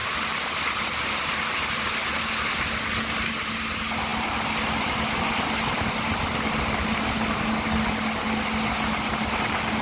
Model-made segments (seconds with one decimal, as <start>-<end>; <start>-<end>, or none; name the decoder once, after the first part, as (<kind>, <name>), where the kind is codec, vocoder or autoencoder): none

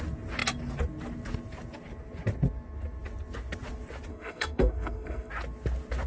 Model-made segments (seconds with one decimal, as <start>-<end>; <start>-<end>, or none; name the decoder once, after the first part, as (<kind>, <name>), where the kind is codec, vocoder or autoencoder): 4.1-5.3 (codec, SNAC)